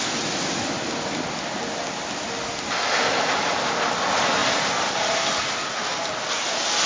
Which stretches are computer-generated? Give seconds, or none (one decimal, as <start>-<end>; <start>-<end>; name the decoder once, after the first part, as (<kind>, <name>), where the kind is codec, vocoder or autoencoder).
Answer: none